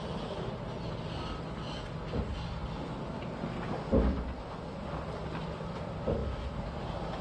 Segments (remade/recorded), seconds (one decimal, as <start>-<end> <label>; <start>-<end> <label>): 0.0-7.2 recorded